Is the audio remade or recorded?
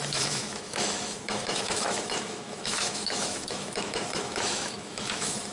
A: remade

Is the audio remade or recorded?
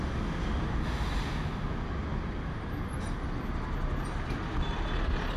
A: recorded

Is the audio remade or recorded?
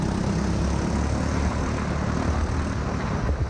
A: recorded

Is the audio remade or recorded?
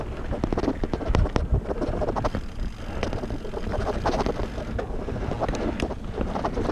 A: recorded